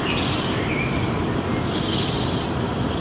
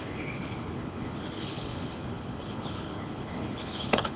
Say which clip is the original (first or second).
first